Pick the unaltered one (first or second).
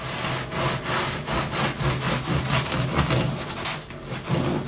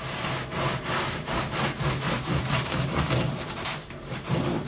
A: first